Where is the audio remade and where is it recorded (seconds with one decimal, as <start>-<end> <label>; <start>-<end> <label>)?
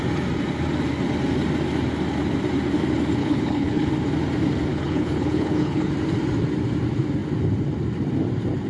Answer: 0.0-3.2 recorded; 3.2-3.9 remade; 3.9-4.7 recorded; 4.7-5.9 remade; 5.9-8.7 recorded